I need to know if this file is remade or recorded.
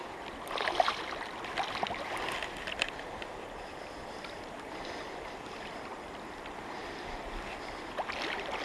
recorded